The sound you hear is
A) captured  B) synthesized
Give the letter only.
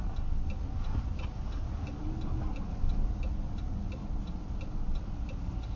A